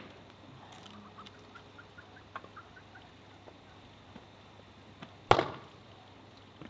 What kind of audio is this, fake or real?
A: real